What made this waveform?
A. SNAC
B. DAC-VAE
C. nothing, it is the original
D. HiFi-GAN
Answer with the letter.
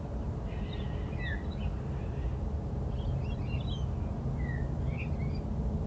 C